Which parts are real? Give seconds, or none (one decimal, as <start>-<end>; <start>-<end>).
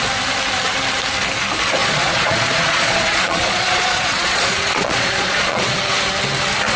0.0-1.8; 5.8-6.8